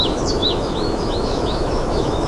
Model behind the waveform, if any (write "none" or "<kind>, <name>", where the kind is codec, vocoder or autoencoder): autoencoder, DAC-VAE